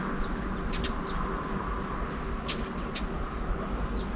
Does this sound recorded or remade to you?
recorded